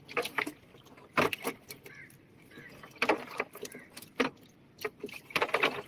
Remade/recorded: remade